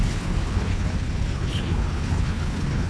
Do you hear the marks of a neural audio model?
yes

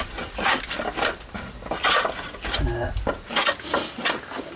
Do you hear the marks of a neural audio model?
no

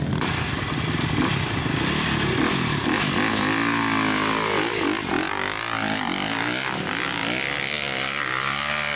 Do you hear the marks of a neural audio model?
no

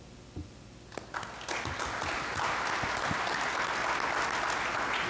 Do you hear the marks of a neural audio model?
no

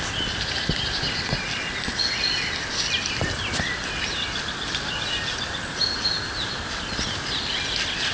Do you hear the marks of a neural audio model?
no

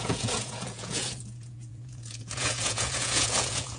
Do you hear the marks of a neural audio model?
yes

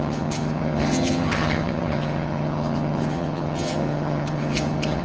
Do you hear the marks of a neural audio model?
yes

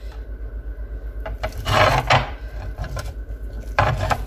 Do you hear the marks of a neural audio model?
yes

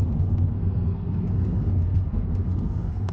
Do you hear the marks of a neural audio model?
yes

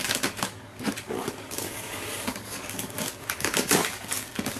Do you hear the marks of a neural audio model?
yes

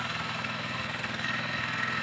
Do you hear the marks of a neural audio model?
yes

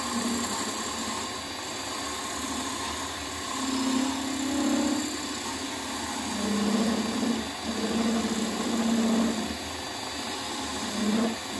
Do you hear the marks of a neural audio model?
no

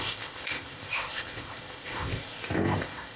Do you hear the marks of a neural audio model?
yes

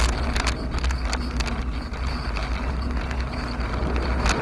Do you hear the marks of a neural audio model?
no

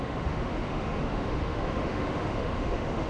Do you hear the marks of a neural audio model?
yes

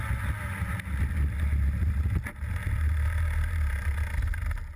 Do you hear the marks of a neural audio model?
no